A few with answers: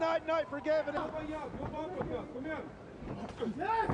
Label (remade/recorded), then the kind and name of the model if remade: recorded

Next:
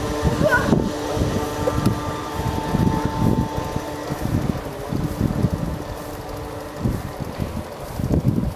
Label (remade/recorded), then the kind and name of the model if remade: recorded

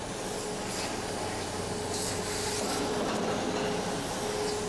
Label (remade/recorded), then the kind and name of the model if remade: recorded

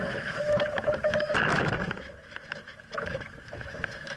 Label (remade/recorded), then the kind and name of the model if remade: remade, autoencoder, DAC-VAE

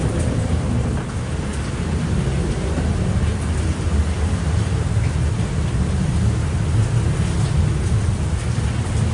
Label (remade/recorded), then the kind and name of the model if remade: recorded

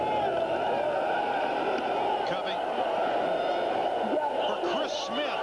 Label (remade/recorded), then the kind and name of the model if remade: recorded